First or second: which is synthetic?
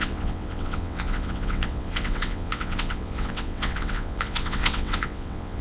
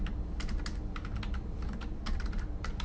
first